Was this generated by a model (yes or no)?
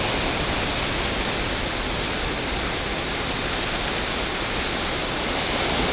no